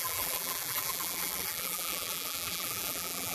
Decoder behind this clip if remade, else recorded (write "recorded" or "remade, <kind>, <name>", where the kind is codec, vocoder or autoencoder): remade, vocoder, BigVGAN v2